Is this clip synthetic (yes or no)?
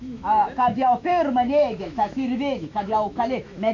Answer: yes